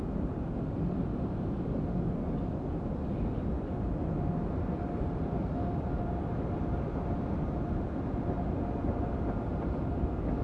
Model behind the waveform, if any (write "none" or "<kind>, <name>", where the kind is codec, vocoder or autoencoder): none